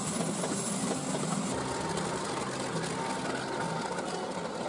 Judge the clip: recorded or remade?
recorded